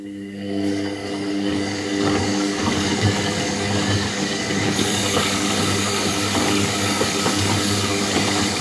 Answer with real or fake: fake